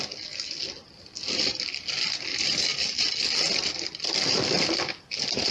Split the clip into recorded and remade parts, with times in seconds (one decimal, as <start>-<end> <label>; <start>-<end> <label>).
0.0-5.5 recorded